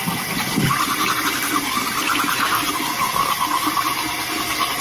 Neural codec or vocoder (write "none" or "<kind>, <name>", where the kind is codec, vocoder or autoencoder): none